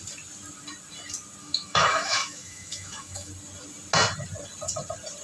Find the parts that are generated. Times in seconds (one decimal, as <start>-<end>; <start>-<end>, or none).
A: 1.4-3.3